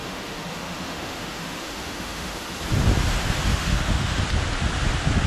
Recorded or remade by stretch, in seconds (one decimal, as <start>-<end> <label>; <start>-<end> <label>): 0.0-2.6 remade; 2.6-3.5 recorded; 3.5-4.2 remade; 4.2-5.3 recorded